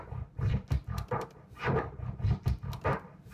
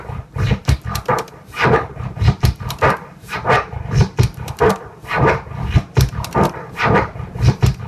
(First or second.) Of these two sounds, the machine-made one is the second